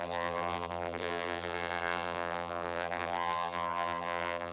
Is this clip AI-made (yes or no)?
yes